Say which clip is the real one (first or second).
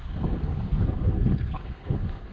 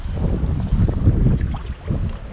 second